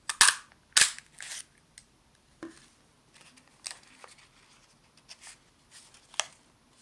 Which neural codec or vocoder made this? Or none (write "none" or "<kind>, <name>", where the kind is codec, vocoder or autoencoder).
none